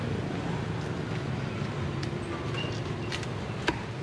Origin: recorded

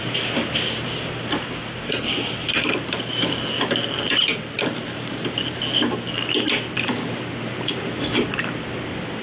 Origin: recorded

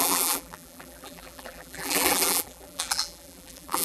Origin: remade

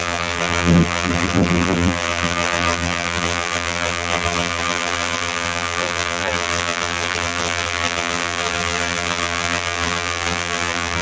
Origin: remade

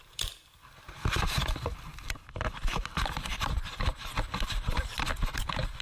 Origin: remade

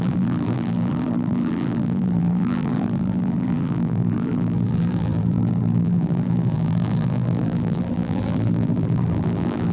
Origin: remade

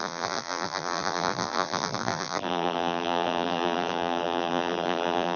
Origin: remade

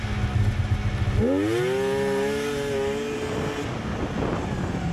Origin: recorded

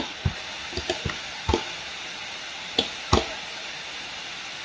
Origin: remade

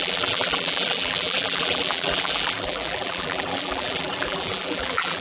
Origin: remade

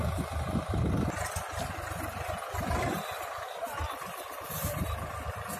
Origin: remade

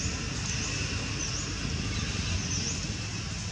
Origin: recorded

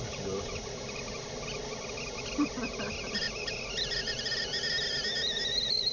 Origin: recorded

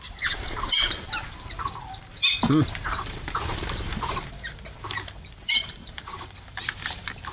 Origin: remade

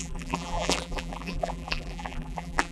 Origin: remade